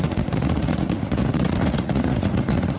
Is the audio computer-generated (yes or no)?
yes